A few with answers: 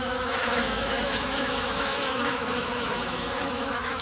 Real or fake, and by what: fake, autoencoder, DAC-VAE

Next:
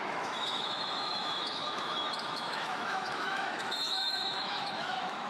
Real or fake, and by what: fake, autoencoder, DAC-VAE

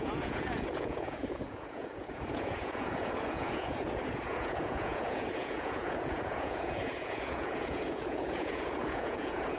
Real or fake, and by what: fake, vocoder, Vocos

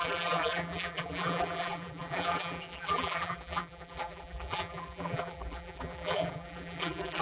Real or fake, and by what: fake, vocoder, BigVGAN v2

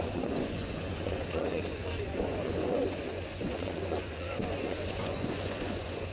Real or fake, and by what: fake, vocoder, Vocos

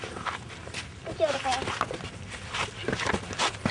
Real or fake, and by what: real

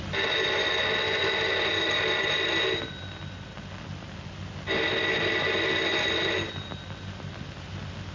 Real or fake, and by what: real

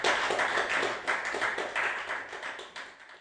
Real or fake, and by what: real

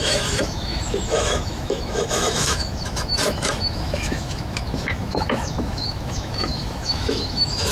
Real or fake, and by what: fake, autoencoder, DAC-VAE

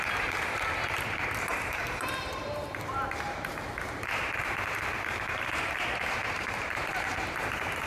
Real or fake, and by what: fake, vocoder, BigVGAN v2